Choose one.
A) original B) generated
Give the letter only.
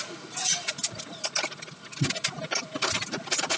A